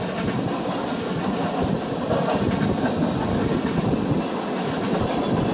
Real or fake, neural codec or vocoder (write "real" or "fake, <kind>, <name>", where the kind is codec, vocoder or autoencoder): real